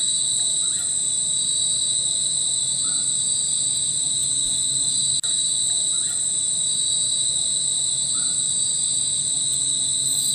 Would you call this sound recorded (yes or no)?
yes